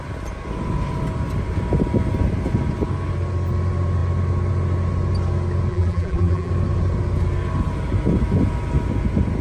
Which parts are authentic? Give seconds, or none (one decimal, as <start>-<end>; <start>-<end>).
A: 0.0-5.7; 6.5-9.4

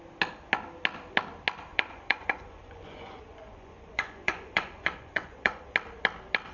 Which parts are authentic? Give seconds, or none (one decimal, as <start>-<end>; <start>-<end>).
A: 0.0-1.7; 5.6-6.5

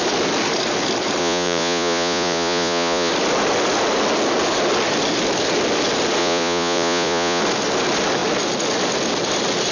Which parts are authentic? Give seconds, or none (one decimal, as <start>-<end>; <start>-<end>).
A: 0.0-1.2; 3.1-6.2; 7.4-9.7

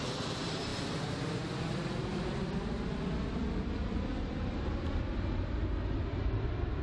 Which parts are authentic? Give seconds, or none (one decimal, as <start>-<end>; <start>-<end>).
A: 0.0-6.8

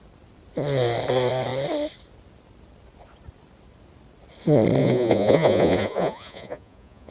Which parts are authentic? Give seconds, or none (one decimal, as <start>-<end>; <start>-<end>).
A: 0.0-4.8

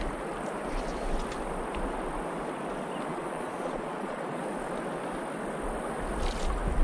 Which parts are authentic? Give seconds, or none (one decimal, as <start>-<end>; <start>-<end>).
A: 0.0-3.1; 4.4-6.8

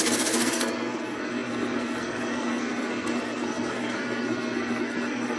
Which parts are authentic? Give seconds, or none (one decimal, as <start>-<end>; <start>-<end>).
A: none